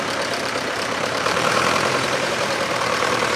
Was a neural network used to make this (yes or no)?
yes